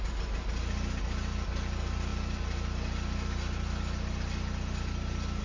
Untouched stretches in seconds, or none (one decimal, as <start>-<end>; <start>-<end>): 0.0-5.4

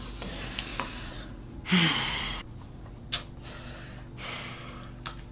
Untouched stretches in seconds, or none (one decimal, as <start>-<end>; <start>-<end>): 0.0-0.7; 3.1-5.3

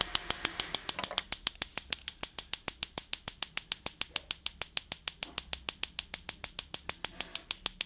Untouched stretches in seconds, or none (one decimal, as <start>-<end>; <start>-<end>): 0.0-7.9

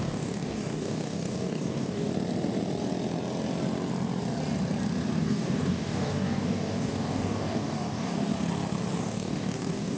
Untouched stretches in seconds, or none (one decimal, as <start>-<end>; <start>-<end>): 2.1-5.2; 8.3-9.0